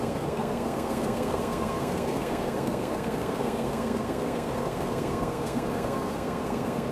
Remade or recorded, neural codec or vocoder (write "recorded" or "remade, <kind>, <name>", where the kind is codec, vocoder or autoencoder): remade, codec, SNAC